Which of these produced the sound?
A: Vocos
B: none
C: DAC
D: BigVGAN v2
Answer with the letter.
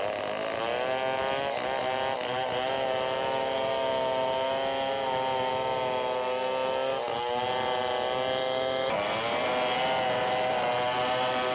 B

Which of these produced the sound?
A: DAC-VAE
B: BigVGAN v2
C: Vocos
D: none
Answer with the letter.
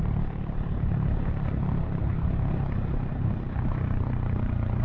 B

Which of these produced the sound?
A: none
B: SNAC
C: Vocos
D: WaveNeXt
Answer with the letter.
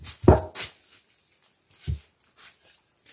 A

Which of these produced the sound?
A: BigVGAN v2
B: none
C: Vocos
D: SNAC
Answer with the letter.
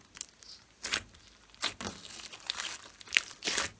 B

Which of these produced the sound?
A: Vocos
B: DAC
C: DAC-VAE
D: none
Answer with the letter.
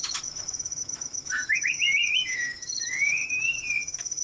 C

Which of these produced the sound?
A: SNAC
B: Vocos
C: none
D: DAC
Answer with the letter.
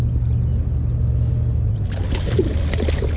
C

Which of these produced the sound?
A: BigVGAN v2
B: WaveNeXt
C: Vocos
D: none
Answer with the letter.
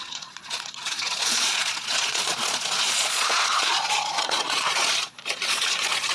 C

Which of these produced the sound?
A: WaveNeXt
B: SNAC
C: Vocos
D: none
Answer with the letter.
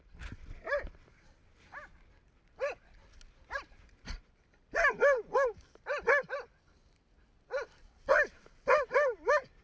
D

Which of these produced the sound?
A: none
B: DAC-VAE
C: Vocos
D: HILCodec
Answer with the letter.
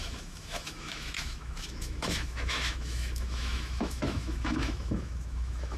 B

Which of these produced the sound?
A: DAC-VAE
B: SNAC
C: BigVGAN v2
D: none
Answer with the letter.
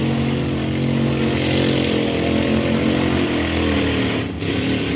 D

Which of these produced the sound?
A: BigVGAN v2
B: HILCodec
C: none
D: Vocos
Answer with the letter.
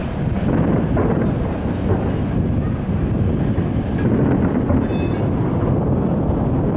C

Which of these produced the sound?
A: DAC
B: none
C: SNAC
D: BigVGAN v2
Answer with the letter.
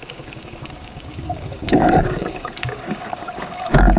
A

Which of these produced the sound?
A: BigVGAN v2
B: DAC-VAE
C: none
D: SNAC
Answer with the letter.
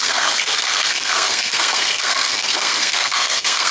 D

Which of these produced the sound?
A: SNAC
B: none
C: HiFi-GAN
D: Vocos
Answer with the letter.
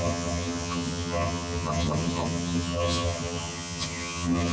C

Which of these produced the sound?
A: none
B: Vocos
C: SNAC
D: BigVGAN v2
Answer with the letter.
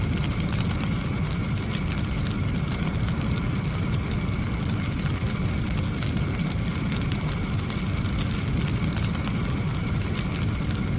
A